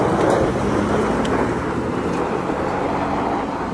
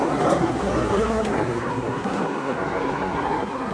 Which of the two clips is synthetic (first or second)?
second